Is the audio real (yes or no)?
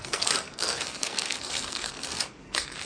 no